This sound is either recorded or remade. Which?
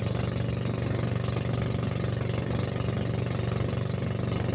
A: recorded